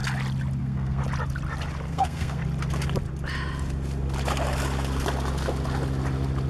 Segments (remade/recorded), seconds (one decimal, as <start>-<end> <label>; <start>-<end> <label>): 0.0-0.6 recorded; 0.6-1.0 remade; 1.0-1.9 recorded; 1.9-2.4 remade; 2.4-6.5 recorded